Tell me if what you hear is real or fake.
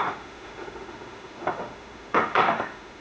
fake